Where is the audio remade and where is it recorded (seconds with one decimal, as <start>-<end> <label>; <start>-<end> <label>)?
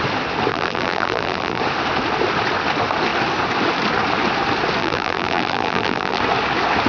0.0-0.5 recorded; 0.5-1.6 remade; 1.6-4.8 recorded; 4.8-6.2 remade; 6.2-6.9 recorded